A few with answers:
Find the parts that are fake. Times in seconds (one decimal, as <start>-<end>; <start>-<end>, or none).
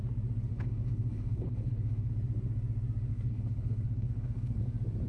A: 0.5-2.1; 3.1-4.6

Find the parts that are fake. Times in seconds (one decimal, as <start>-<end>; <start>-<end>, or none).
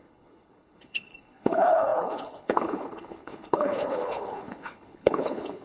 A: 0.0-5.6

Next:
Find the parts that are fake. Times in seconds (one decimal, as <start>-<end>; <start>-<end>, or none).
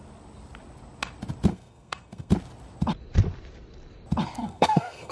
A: 1.5-2.3; 4.4-5.1